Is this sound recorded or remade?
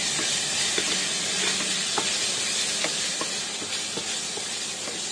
recorded